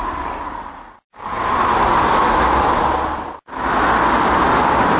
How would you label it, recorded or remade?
recorded